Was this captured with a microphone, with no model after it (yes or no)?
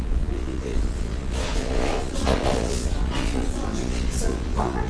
no